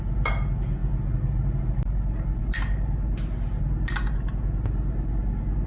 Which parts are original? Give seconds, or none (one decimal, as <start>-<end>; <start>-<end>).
0.0-5.7